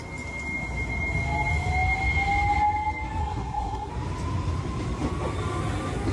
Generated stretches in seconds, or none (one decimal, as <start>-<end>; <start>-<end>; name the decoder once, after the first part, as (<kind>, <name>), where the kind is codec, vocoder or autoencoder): 3.2-3.9 (codec, SNAC)